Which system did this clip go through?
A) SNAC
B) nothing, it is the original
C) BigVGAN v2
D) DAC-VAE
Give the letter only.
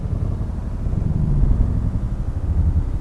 B